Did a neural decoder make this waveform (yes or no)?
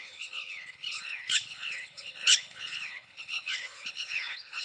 yes